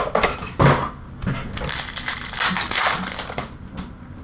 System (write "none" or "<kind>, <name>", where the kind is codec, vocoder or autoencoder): none